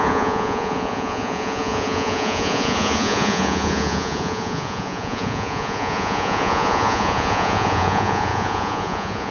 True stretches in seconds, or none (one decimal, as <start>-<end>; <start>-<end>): none